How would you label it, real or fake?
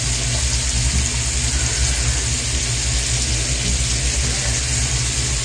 real